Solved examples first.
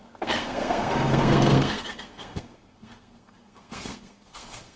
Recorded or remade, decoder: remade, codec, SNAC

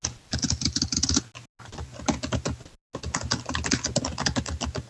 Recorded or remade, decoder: recorded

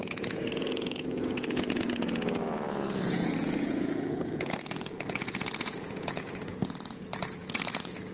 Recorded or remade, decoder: remade, vocoder, Vocos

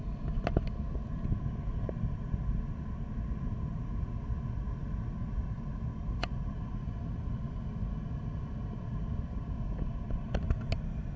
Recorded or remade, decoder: recorded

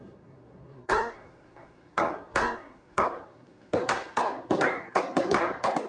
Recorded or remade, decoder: remade, codec, SNAC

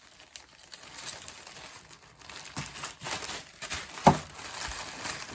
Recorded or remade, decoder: recorded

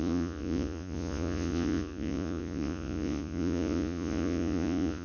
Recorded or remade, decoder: remade, vocoder, Vocos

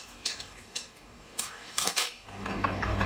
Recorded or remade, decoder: remade, codec, DAC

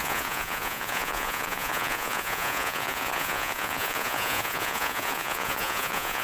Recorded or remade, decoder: remade, vocoder, Vocos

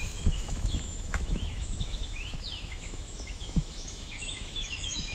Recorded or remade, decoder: remade, autoencoder, DAC-VAE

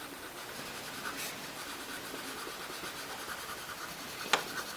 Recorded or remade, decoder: recorded